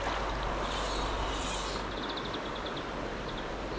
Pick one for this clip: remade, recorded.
recorded